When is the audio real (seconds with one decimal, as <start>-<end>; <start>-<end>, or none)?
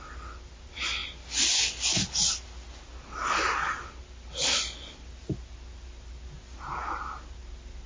0.0-7.9